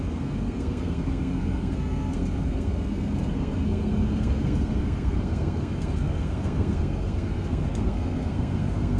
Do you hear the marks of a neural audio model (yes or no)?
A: yes